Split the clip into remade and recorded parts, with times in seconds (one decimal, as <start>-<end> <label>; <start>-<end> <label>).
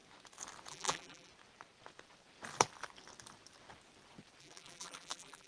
0.0-0.7 recorded; 0.7-1.3 remade; 1.3-4.4 recorded; 4.4-5.5 remade